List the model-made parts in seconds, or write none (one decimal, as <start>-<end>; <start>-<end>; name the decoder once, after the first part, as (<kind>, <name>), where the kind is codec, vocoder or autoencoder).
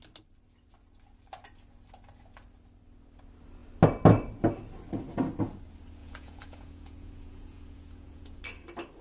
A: 6.0-8.4 (vocoder, Vocos)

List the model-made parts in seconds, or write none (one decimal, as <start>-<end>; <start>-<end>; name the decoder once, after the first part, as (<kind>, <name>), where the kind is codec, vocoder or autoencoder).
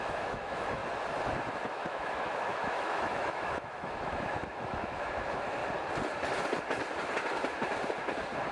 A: 0.0-0.8 (autoencoder, DAC-VAE); 1.7-5.6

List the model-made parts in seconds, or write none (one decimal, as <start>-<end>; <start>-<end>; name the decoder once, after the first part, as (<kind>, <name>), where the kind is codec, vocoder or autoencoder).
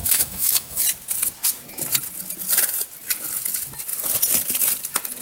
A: 0.0-0.8 (autoencoder, DAC-VAE)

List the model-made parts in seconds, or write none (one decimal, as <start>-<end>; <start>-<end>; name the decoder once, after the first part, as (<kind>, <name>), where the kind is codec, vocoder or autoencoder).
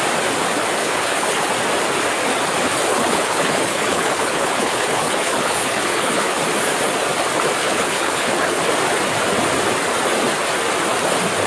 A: 0.8-1.5 (codec, HILCodec); 2.9-6.4; 7.6-8.6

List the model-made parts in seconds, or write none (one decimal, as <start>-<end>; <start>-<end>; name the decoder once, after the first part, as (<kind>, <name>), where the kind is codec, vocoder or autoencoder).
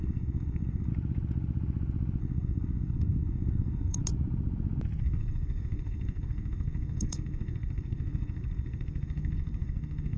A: 0.0-0.9 (codec, SNAC); 2.2-4.0; 5.0-10.2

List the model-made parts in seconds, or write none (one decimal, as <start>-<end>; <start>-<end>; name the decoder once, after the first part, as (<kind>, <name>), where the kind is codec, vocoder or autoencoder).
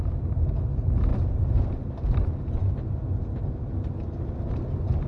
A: none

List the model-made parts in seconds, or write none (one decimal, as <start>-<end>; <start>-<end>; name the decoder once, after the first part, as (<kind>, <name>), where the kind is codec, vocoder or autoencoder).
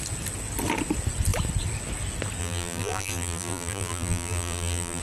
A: 2.4-5.0 (vocoder, BigVGAN v2)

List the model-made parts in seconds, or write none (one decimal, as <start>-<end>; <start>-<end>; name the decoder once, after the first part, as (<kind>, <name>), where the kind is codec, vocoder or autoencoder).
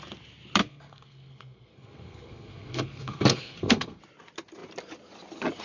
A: 0.6-4.0 (codec, SNAC)